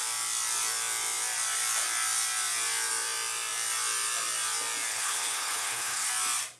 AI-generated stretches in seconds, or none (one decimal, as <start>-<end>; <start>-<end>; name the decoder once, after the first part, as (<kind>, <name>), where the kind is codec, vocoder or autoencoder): 4.9-6.1 (codec, HILCodec)